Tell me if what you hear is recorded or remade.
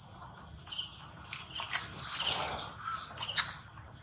recorded